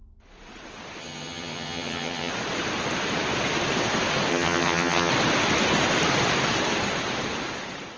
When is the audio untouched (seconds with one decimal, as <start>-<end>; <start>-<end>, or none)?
0.0-1.0; 2.3-4.3; 5.1-8.0